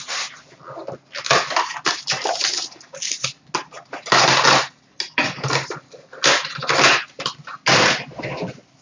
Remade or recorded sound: recorded